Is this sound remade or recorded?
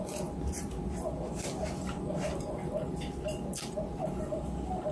recorded